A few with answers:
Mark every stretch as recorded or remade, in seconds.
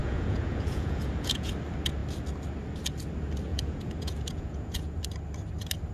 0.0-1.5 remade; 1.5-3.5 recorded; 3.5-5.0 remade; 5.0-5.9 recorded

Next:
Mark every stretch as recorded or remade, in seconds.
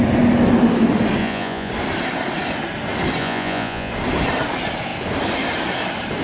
0.0-1.2 recorded; 1.2-1.7 remade; 1.7-3.2 recorded; 3.2-3.9 remade; 3.9-6.2 recorded